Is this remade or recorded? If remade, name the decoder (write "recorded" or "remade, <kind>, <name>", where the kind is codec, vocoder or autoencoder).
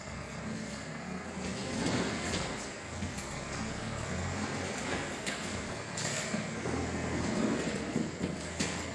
remade, codec, SNAC